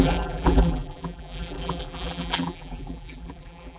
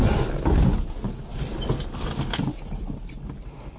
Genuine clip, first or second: second